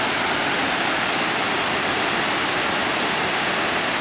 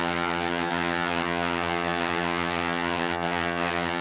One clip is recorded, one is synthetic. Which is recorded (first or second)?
first